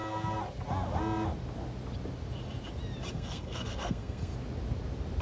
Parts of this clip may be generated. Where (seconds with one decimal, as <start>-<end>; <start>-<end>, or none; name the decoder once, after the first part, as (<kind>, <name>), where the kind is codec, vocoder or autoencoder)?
3.1-4.3 (codec, SNAC)

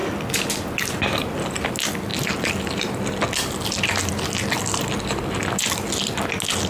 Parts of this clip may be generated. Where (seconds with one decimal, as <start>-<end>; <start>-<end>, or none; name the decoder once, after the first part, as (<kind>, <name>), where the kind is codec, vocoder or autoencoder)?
none